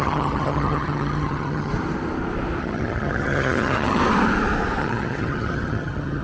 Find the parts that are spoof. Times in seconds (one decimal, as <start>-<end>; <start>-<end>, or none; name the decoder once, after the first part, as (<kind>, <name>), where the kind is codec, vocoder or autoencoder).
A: 0.0-1.7 (vocoder, HiFi-GAN); 2.6-4.0; 4.8-6.2